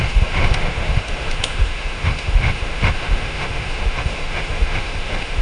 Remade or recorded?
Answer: remade